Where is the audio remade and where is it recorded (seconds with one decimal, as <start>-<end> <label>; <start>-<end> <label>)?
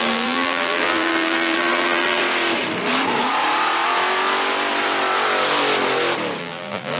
0.0-2.2 remade; 2.2-6.4 recorded; 6.4-7.0 remade